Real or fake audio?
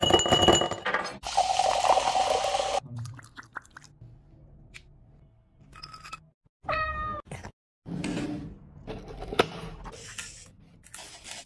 real